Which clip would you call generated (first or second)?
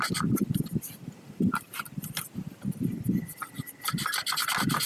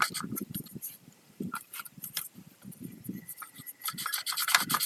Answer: second